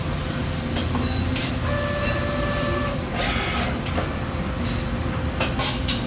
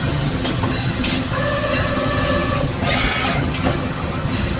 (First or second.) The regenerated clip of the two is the second